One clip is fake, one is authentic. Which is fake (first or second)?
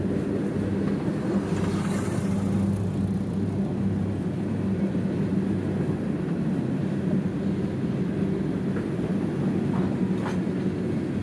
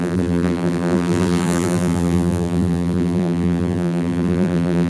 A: second